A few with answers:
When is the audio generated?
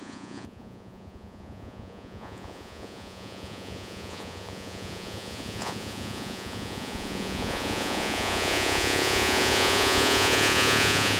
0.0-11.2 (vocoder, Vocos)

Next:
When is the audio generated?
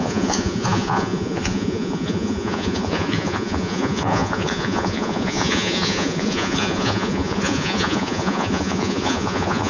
0.0-9.7 (vocoder, Vocos)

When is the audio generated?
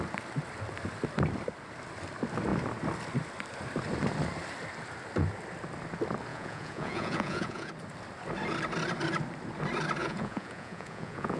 6.3-7.7 (vocoder, Vocos); 10.0-11.4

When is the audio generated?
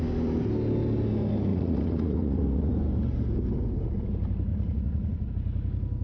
1.5-2.7 (vocoder, Vocos); 4.5-5.3